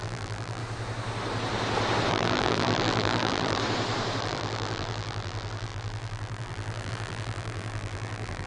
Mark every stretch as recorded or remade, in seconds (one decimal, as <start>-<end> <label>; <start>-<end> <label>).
0.0-0.6 remade; 0.6-2.1 recorded; 2.1-3.6 remade; 3.6-4.2 recorded; 4.2-8.5 remade